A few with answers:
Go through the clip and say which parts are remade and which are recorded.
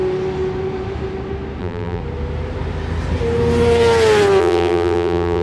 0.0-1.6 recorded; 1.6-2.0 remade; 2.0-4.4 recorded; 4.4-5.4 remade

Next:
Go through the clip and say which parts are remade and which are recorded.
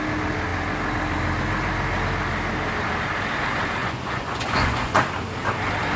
0.0-3.8 recorded; 3.8-5.0 remade; 5.0-6.0 recorded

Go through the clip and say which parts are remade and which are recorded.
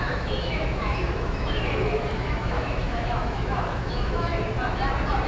0.0-4.3 remade; 4.3-5.3 recorded